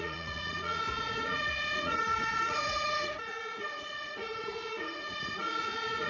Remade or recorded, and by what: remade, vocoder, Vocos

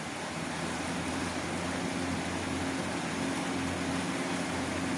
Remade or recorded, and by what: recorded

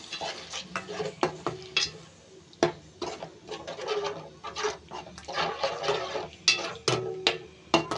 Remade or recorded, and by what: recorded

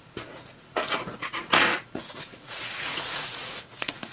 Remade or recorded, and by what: remade, vocoder, Vocos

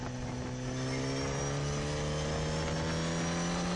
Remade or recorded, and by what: recorded